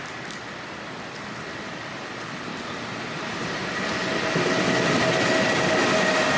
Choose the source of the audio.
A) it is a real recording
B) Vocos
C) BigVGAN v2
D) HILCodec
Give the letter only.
A